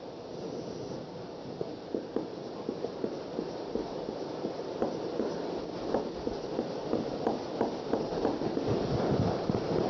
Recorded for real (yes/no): yes